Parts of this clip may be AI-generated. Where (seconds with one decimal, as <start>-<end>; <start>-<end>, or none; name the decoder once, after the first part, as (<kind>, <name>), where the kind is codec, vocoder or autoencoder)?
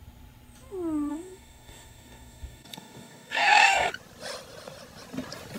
1.1-3.9 (codec, DAC)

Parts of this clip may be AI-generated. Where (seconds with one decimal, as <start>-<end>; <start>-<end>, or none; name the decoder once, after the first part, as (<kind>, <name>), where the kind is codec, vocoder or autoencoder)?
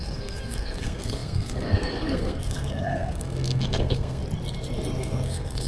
0.0-4.2 (codec, SNAC); 5.0-5.7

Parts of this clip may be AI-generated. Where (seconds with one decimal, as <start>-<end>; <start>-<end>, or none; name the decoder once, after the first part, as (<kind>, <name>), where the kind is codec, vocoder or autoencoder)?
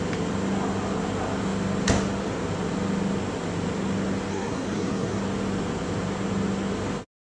4.3-5.2 (codec, SNAC)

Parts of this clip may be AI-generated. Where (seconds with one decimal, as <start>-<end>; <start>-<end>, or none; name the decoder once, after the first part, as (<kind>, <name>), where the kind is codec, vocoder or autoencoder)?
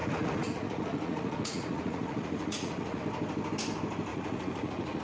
0.0-3.0 (vocoder, Vocos); 4.1-5.0